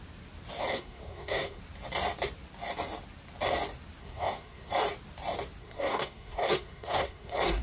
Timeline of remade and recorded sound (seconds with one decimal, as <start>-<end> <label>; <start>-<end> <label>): 0.0-0.7 recorded; 0.7-1.6 remade; 1.6-4.0 recorded; 4.0-4.7 remade; 4.7-5.6 recorded; 5.6-7.6 remade